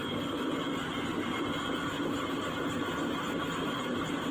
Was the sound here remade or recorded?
recorded